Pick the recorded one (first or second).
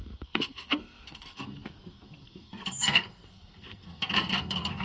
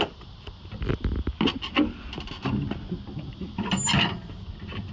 second